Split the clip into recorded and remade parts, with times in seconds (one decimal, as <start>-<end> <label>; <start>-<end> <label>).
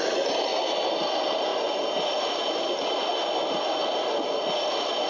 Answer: 0.0-3.1 remade; 3.1-5.1 recorded